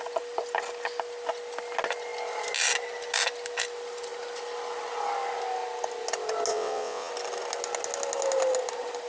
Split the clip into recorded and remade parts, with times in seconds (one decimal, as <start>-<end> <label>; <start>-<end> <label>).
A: 0.0-6.5 recorded; 6.5-7.1 remade; 7.1-9.1 recorded